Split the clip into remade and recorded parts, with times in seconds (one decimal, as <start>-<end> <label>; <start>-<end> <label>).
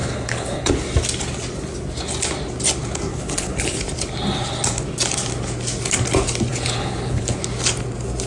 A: 0.0-0.7 remade; 0.7-3.1 recorded; 3.1-3.8 remade; 3.8-6.5 recorded; 6.5-7.4 remade; 7.4-8.3 recorded